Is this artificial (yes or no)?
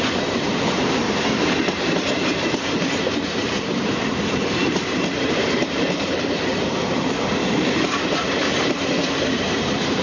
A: yes